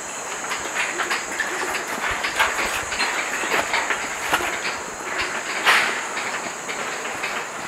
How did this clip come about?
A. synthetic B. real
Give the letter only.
B